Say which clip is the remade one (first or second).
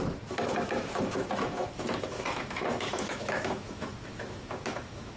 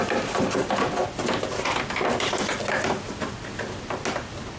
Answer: first